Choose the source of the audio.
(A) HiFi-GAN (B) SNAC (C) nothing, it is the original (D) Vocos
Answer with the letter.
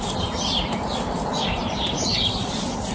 C